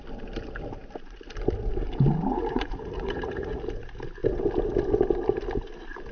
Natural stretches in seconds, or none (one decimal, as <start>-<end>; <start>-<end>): 0.0-2.3; 3.6-6.1